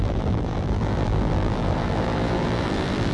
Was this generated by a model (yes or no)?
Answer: yes